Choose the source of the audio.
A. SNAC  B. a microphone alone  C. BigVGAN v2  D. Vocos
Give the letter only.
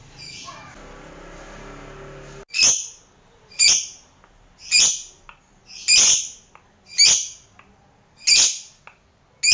B